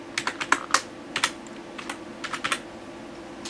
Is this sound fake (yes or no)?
no